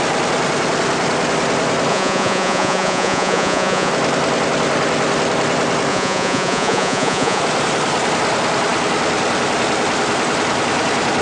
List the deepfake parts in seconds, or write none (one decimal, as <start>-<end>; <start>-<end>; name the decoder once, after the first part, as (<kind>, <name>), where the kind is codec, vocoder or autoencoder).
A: 1.9-3.9 (vocoder, Vocos); 5.9-7.4